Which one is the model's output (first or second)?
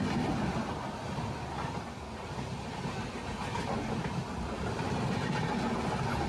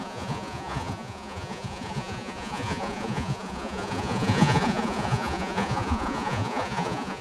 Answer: second